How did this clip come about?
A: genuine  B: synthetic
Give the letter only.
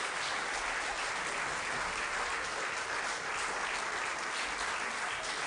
A